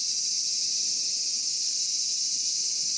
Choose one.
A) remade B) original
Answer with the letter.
B